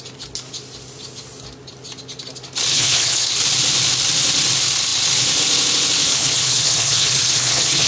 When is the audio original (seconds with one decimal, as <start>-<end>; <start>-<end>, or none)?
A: 0.0-2.7; 3.3-6.1